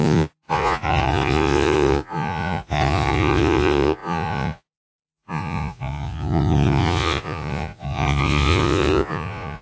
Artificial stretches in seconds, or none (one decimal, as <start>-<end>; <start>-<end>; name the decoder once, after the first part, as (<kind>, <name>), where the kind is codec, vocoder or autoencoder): 0.0-9.6 (vocoder, Vocos)